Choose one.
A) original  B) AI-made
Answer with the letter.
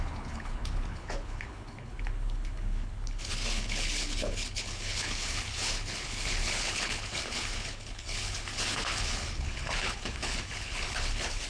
B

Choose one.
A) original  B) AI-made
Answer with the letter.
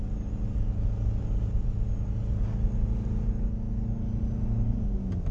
A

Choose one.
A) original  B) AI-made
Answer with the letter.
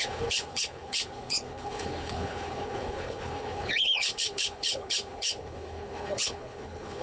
B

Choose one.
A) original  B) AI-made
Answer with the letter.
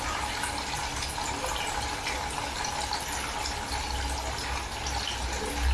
A